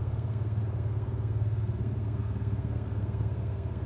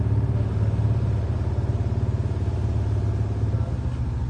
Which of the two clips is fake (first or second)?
first